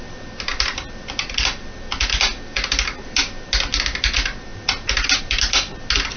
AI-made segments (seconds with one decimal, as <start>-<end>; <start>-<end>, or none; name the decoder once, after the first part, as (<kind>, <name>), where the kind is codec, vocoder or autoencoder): none